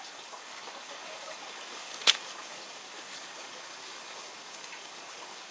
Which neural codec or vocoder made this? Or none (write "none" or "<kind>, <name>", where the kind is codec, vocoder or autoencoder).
codec, DAC